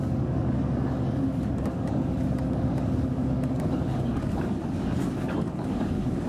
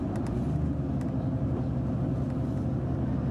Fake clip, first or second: first